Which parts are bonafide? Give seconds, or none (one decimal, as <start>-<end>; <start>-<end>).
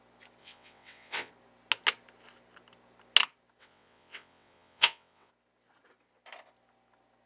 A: 0.0-0.4; 1.3-3.6; 5.3-7.3